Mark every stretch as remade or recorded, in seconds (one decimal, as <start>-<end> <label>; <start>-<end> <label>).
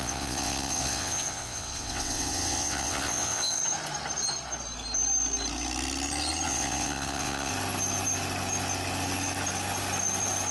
0.0-3.6 remade; 3.6-6.5 recorded; 6.5-7.5 remade; 7.5-10.5 recorded